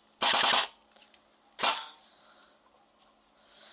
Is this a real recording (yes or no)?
yes